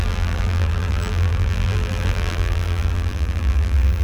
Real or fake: fake